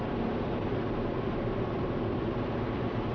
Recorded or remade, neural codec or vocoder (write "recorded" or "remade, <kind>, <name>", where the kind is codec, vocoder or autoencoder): remade, vocoder, BigVGAN v2